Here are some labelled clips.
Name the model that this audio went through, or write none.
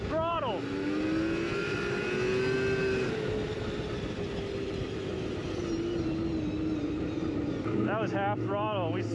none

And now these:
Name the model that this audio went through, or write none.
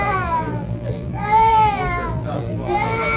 vocoder, BigVGAN v2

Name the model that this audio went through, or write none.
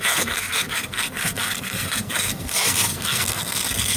codec, SNAC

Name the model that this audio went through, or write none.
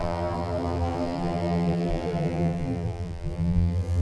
vocoder, BigVGAN v2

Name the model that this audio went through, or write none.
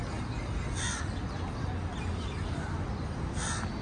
none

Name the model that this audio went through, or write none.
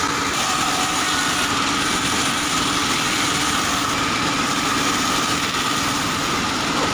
none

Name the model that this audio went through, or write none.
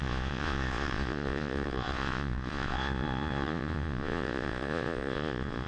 vocoder, Vocos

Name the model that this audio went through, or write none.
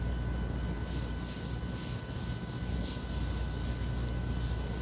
none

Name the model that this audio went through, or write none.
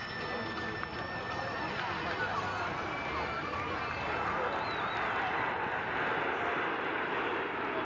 none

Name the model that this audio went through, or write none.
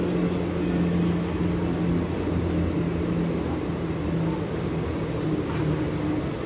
none